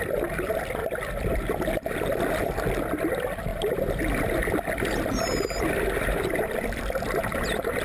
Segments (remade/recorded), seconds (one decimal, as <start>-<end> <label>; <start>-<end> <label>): 0.0-0.8 recorded; 0.8-2.8 remade; 2.8-7.8 recorded